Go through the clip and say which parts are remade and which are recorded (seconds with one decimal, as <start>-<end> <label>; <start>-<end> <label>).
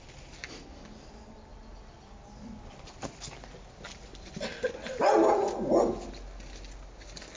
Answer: 0.0-7.4 recorded